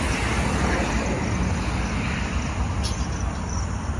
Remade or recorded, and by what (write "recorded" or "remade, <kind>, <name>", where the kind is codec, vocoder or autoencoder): recorded